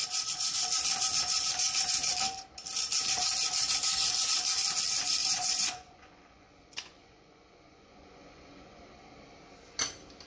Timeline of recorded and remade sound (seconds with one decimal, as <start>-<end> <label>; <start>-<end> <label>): 0.0-5.2 recorded; 5.2-8.8 remade; 8.8-10.3 recorded